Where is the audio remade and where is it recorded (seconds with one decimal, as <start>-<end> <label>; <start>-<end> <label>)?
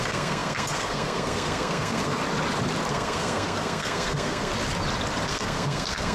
0.0-2.2 remade; 2.2-2.9 recorded; 2.9-4.5 remade; 4.5-5.3 recorded; 5.3-6.1 remade